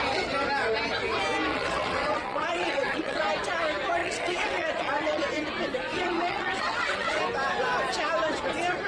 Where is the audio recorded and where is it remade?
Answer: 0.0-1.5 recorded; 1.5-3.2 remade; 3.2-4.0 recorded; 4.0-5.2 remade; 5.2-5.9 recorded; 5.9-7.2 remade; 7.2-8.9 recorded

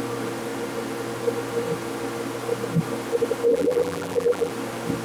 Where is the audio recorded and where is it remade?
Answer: 0.0-3.5 recorded; 3.5-4.5 remade; 4.5-5.0 recorded

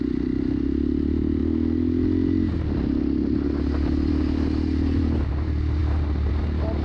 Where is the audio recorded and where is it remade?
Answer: 0.0-6.8 recorded

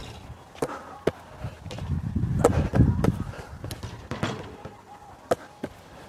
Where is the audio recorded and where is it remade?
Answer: 0.0-2.7 recorded; 2.7-3.6 remade; 3.6-6.1 recorded

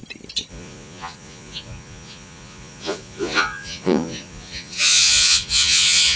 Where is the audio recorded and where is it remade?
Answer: 0.0-0.5 recorded; 0.5-6.2 remade

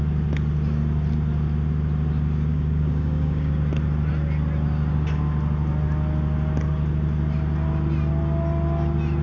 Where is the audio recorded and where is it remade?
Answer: 0.0-2.5 recorded; 2.5-3.5 remade; 3.5-9.2 recorded